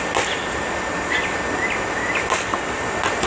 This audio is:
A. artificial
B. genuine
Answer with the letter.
B